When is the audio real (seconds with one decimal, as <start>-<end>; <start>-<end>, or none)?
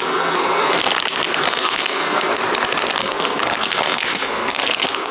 0.8-1.4; 2.3-3.0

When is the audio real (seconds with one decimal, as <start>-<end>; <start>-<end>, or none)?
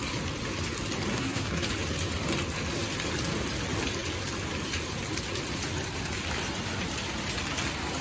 0.0-1.1; 1.7-8.0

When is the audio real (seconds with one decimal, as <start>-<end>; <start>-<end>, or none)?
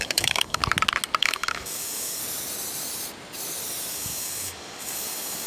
0.6-1.2; 2.2-3.9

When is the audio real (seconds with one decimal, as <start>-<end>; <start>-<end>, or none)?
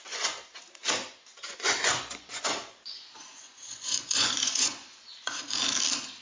0.4-1.4; 5.1-6.2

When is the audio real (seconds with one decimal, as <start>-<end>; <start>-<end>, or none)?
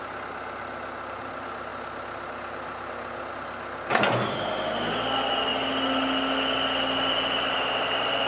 0.0-8.3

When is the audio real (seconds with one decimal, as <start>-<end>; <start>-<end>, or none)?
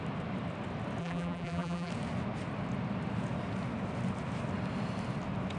0.0-1.0; 1.9-5.6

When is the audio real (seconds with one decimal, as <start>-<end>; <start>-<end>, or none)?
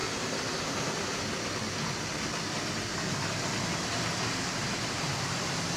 0.0-5.8